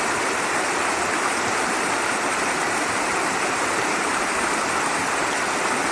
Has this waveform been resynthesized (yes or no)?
no